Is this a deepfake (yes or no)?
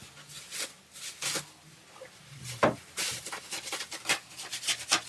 no